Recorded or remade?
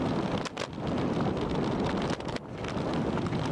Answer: recorded